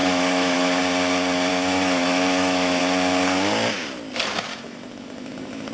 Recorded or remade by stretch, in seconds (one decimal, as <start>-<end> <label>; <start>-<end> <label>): 0.0-0.8 remade; 0.8-1.5 recorded; 1.5-2.8 remade; 2.8-4.5 recorded; 4.5-5.7 remade